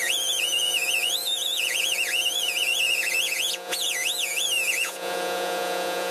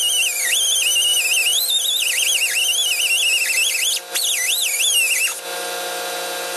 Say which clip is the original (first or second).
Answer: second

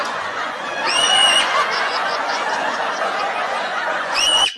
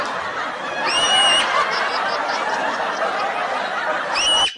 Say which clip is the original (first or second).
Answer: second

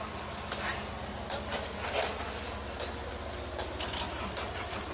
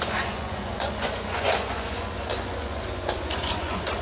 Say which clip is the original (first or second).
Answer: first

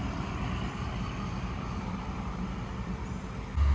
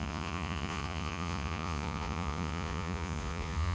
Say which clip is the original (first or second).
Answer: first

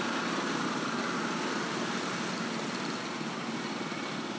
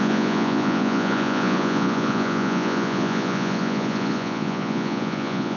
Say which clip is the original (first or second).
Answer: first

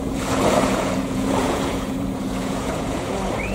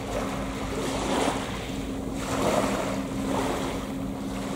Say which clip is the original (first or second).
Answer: second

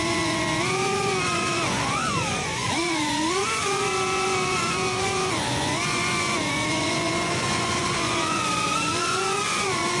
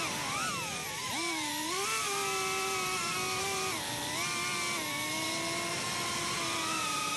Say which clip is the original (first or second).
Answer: second